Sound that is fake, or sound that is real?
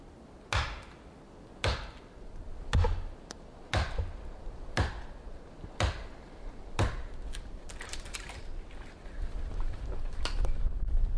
real